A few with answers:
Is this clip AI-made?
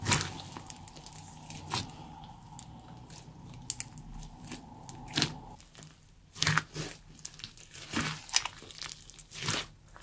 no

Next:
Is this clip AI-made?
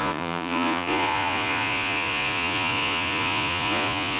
yes